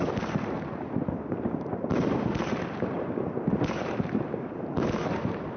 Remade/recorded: remade